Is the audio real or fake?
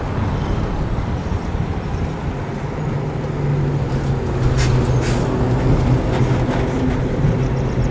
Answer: real